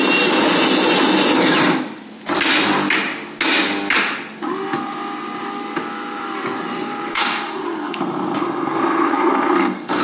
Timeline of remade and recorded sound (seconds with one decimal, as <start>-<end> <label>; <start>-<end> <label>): 0.0-7.1 recorded; 7.1-10.0 remade